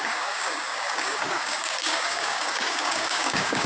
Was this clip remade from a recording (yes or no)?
yes